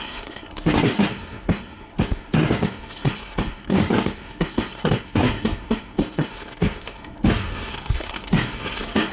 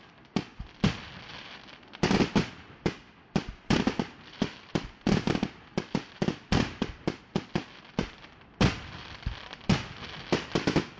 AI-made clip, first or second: first